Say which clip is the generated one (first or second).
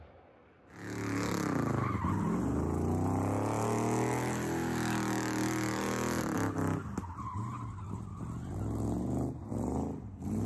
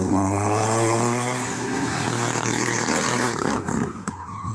second